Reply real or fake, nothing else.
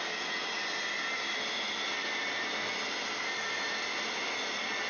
real